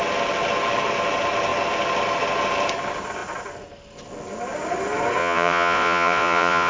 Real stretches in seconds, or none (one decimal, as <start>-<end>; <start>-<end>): 0.0-5.2